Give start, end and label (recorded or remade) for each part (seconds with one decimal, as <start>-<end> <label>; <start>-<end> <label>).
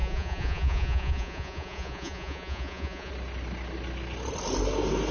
0.0-3.1 remade; 3.1-5.1 recorded